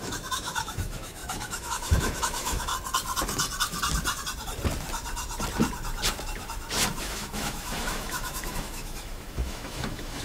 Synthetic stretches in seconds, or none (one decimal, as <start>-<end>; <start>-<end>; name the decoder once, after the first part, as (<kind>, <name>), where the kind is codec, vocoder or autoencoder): 0.0-2.7 (autoencoder, DAC-VAE); 7.0-10.2